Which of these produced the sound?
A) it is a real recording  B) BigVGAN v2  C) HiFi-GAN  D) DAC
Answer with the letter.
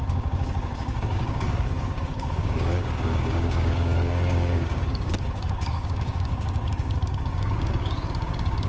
D